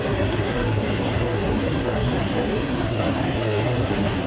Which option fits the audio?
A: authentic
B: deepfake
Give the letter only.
B